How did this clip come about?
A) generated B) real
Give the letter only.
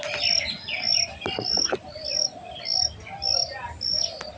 B